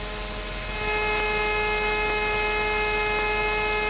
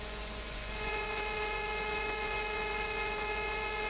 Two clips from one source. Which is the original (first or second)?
first